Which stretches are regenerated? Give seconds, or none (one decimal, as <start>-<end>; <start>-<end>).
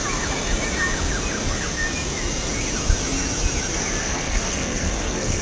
4.0-5.4